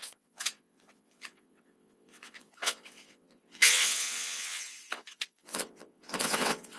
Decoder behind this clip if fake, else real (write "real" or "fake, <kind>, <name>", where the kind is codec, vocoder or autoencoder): fake, vocoder, WaveNeXt